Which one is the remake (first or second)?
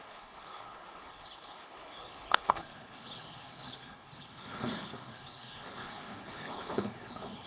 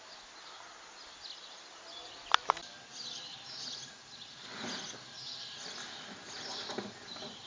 first